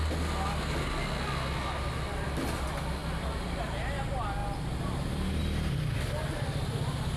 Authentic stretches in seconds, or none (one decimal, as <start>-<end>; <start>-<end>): 0.0-7.2